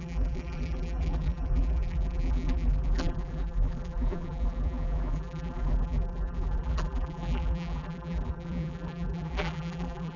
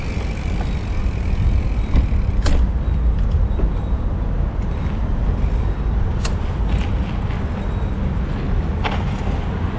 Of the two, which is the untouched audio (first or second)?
second